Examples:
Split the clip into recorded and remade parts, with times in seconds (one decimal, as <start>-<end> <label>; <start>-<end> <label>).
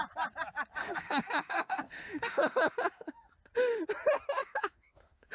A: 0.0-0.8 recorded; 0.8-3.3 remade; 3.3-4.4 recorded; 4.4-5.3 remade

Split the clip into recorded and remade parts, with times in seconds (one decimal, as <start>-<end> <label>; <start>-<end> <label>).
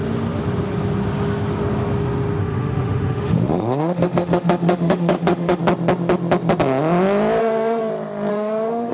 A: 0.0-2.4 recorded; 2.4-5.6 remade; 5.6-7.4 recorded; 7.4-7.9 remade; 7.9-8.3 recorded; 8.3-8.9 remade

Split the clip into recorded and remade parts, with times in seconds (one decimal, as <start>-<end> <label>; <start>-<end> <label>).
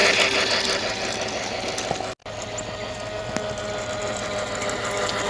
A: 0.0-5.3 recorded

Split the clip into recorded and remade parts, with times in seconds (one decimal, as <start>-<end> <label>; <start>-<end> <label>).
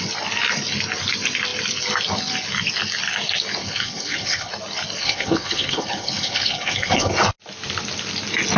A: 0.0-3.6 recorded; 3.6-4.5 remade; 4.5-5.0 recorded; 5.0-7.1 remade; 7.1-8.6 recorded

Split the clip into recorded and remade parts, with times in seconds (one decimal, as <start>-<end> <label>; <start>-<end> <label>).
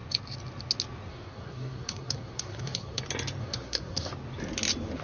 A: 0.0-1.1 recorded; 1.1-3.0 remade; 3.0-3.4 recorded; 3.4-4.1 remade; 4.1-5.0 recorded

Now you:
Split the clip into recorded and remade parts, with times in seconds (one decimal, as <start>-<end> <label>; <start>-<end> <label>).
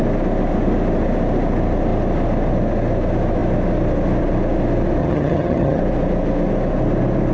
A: 0.0-5.0 recorded; 5.0-5.8 remade; 5.8-7.3 recorded